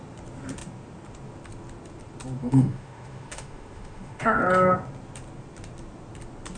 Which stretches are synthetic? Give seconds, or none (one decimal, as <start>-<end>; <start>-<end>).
2.4-4.4